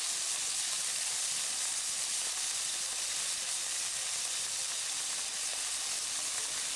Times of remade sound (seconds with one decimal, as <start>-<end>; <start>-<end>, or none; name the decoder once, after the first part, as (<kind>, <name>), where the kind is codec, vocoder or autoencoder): none